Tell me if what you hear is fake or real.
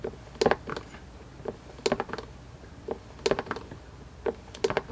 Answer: real